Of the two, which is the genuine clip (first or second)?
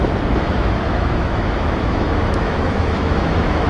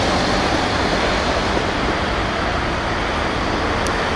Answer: second